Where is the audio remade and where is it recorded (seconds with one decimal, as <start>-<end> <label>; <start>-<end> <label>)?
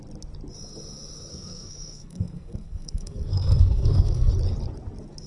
0.0-1.3 recorded; 1.3-4.3 remade; 4.3-5.3 recorded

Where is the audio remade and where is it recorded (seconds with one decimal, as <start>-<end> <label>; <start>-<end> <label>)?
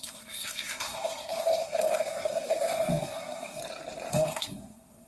0.0-3.6 remade; 3.6-4.1 recorded; 4.1-5.1 remade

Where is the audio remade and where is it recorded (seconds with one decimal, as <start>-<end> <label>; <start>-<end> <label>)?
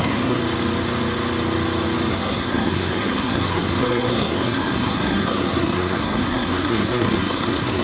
0.0-0.4 remade; 0.4-2.1 recorded; 2.1-7.8 remade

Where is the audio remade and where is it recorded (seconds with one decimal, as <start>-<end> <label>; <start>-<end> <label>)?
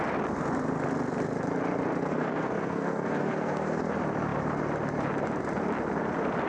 0.0-2.1 recorded; 2.1-3.8 remade; 3.8-6.5 recorded